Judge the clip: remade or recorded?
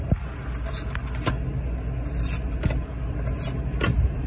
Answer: recorded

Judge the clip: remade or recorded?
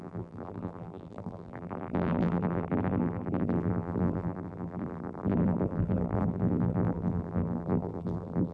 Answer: remade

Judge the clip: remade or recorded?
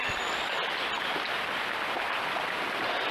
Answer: recorded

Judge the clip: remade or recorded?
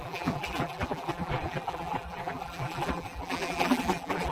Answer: remade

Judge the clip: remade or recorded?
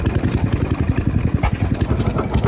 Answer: recorded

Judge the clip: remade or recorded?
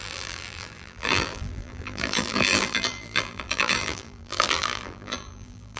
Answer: remade